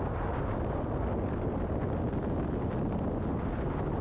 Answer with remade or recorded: recorded